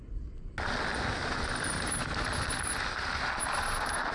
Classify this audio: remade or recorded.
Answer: recorded